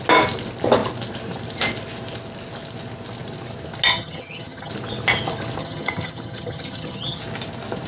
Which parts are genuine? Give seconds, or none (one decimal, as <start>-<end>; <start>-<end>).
0.0-3.9; 4.7-5.6; 7.2-7.9